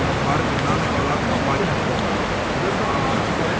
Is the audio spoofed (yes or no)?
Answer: no